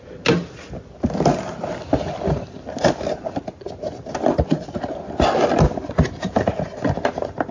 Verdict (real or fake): real